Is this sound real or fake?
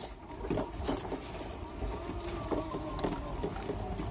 real